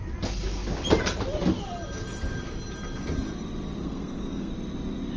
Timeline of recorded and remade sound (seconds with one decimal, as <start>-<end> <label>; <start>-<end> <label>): 0.0-3.8 recorded; 3.8-4.5 remade; 4.5-5.2 recorded